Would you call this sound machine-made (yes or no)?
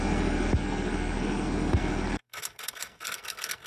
yes